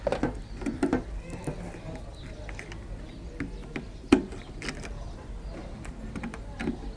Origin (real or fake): real